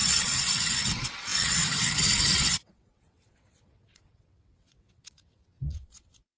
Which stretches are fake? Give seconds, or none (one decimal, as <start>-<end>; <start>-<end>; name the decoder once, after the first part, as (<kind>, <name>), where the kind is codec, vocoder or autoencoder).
0.0-6.4 (vocoder, WaveNeXt)